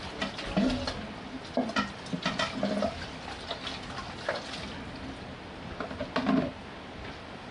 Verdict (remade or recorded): recorded